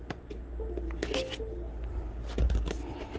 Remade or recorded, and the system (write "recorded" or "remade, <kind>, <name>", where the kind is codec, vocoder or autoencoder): recorded